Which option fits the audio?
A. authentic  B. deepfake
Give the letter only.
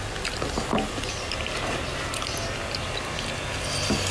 A